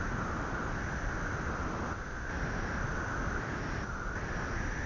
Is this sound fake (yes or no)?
no